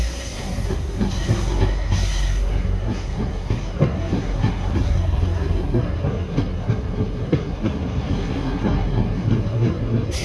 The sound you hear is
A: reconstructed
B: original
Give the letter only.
A